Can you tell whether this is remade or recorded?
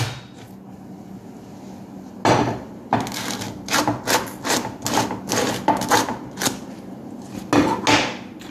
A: recorded